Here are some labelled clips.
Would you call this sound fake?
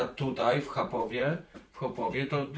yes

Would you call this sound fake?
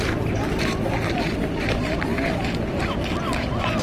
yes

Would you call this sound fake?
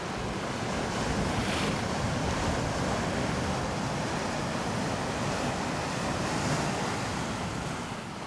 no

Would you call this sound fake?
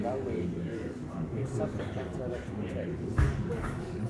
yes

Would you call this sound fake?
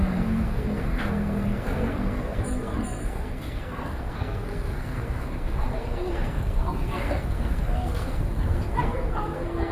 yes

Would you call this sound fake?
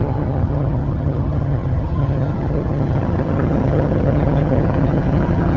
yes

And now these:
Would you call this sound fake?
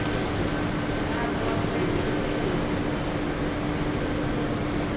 no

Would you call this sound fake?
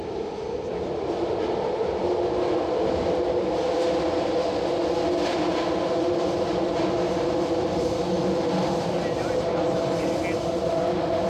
no